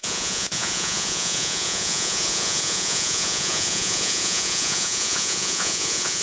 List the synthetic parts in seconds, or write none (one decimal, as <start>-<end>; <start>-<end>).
0.0-6.2